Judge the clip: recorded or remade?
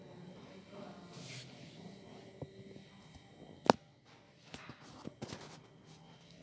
recorded